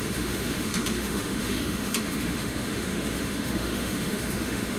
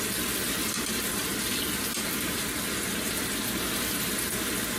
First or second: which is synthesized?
first